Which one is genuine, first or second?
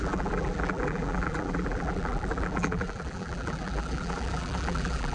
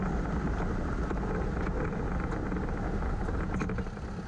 second